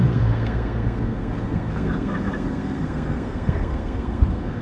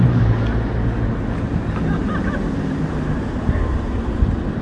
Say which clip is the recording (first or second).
second